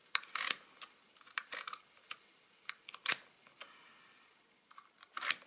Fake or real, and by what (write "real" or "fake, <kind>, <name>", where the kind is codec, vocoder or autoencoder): real